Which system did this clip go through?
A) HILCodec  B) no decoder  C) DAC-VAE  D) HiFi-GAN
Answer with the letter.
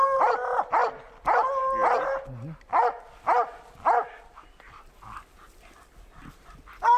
B